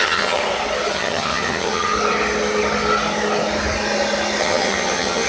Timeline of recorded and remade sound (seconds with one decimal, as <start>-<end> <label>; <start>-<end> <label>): 0.0-0.4 remade; 0.4-0.9 recorded; 0.9-1.9 remade; 1.9-4.4 recorded; 4.4-5.3 remade